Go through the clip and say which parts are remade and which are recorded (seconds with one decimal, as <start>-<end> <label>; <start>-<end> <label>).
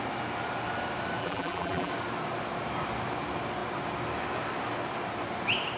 0.0-1.2 recorded; 1.2-1.9 remade; 1.9-5.8 recorded